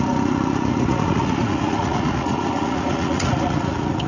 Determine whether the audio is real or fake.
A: fake